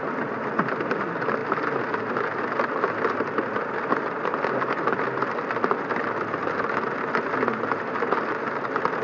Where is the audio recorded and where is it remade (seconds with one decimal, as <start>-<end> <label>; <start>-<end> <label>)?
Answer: 0.0-9.0 recorded